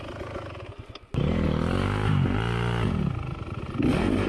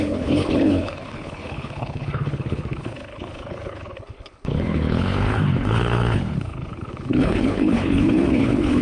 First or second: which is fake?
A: second